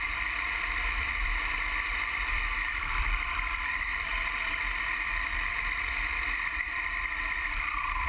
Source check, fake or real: fake